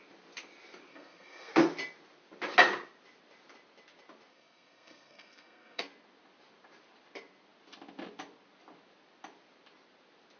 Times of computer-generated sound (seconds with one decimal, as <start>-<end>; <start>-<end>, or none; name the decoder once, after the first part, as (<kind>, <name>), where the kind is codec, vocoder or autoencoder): 0.9-1.5 (codec, SNAC); 4.3-5.8